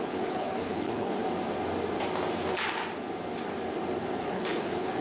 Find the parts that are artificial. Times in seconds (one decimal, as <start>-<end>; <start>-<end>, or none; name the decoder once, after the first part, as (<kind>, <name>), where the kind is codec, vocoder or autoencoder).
0.0-1.2 (codec, HILCodec); 4.2-5.0